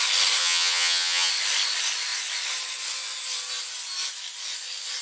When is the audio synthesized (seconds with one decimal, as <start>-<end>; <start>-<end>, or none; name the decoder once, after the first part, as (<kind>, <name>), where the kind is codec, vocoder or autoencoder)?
0.4-1.3 (vocoder, HiFi-GAN)